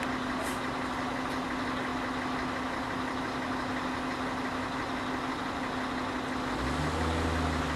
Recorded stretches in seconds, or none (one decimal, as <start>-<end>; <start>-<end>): 0.0-7.8